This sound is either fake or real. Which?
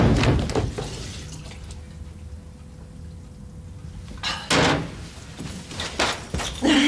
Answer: real